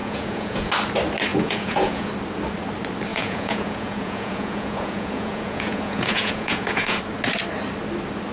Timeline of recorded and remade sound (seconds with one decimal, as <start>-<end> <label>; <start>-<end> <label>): 0.0-0.7 remade; 0.7-1.3 recorded; 1.3-2.1 remade; 2.1-3.1 recorded; 3.1-7.0 remade; 7.0-8.3 recorded

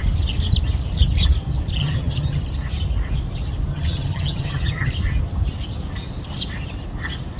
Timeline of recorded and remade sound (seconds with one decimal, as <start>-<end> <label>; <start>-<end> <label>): 0.0-1.8 recorded; 1.8-2.4 remade; 2.4-3.7 recorded; 3.7-4.9 remade; 4.9-7.4 recorded

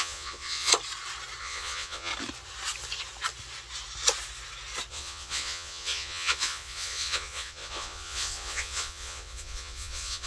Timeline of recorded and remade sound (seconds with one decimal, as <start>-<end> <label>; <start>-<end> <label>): 0.0-0.7 remade; 0.7-1.4 recorded; 1.4-2.1 remade; 2.1-4.9 recorded; 4.9-10.3 remade